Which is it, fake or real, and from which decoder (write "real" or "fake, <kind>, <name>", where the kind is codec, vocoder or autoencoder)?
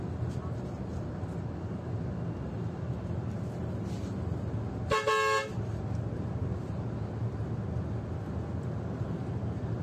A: real